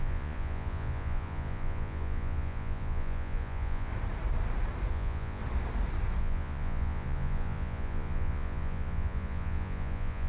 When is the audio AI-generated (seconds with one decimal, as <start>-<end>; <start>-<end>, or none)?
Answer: 0.0-3.9; 4.9-5.4; 6.2-10.3